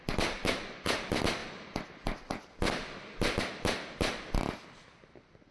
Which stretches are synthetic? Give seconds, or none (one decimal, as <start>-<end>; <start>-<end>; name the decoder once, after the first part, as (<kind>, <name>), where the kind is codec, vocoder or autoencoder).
none